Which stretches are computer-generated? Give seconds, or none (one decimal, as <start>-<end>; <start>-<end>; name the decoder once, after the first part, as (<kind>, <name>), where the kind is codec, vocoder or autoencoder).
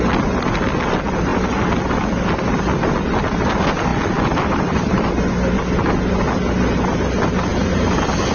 3.9-4.9 (vocoder, BigVGAN v2)